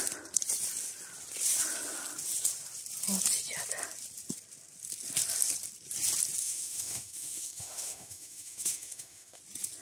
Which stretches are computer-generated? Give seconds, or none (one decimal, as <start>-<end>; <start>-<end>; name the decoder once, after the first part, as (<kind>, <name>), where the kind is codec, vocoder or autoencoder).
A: 6.4-9.4 (autoencoder, DAC-VAE)